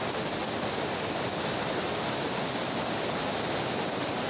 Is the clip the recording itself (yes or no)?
yes